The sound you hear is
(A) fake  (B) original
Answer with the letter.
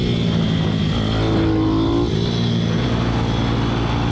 B